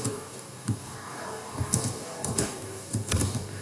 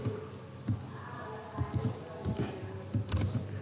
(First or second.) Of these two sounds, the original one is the second